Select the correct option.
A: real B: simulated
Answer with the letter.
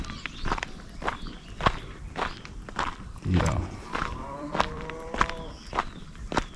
B